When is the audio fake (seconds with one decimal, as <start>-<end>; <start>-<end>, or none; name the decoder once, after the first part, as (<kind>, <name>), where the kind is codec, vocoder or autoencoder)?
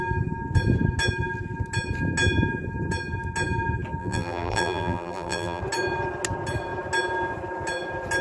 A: 4.0-5.6 (vocoder, BigVGAN v2)